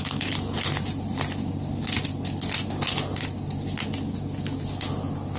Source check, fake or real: real